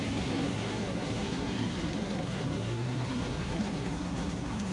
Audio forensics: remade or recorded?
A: remade